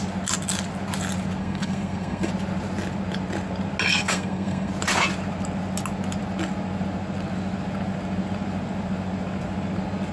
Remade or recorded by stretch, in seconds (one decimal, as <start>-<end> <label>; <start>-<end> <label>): 0.0-1.4 recorded; 1.4-2.3 remade; 2.3-3.9 recorded; 3.9-4.7 remade; 4.7-10.1 recorded